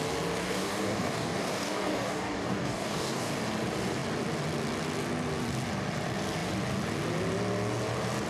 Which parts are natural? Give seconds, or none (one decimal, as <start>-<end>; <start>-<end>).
0.0-0.4; 3.4-8.3